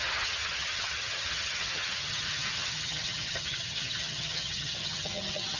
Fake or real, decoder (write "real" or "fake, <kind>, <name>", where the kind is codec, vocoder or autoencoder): fake, vocoder, HiFi-GAN